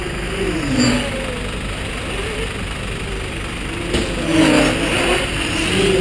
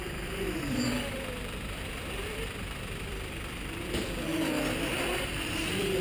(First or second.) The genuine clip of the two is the first